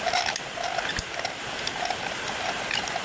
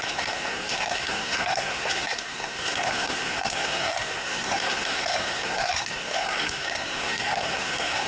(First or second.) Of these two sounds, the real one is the first